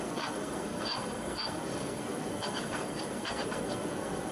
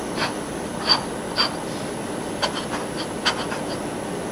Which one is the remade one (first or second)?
first